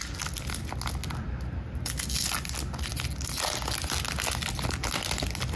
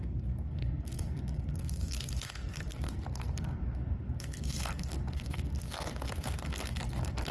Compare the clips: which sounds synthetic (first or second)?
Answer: second